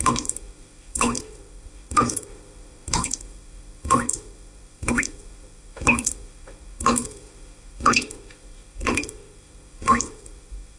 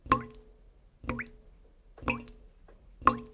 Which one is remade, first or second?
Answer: first